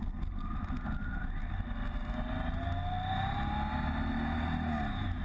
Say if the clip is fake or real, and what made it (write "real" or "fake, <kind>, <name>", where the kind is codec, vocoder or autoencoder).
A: real